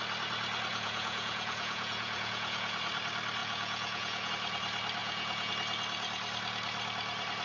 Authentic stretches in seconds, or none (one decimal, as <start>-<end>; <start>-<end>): 0.0-0.7; 2.8-3.4; 4.3-5.0; 5.5-7.4